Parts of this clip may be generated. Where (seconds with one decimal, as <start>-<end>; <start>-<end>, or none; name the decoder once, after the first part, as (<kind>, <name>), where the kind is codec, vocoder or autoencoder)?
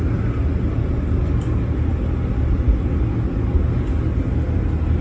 none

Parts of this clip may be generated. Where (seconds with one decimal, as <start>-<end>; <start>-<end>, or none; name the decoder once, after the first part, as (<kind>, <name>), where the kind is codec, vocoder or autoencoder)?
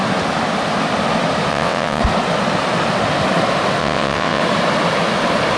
1.5-2.0 (vocoder, WaveNeXt); 3.8-4.4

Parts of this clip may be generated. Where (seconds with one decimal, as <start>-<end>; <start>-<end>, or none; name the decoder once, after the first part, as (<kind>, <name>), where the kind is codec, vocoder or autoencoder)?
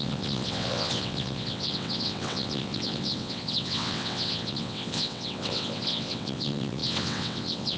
0.0-7.8 (vocoder, WaveNeXt)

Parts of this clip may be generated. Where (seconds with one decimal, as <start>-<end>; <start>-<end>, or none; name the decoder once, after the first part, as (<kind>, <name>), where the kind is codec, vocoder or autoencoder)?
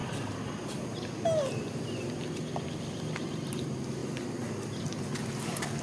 none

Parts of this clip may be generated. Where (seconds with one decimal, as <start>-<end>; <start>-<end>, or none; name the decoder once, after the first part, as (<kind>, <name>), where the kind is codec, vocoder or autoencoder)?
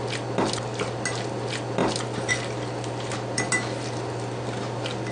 none